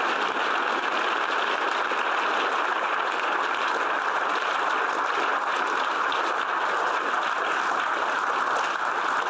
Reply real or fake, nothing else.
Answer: real